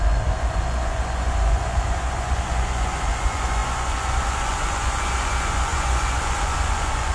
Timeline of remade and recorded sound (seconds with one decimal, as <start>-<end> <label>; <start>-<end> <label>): 0.0-7.1 remade